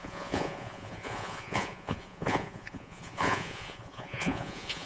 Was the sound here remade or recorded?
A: remade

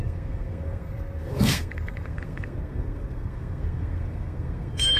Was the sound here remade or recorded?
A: remade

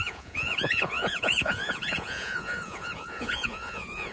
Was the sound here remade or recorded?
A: remade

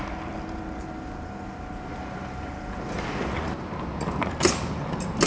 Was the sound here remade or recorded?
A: recorded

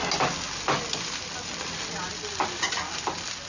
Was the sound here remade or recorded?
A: recorded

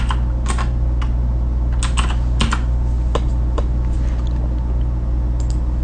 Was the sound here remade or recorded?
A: recorded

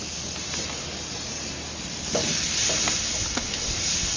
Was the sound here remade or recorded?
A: recorded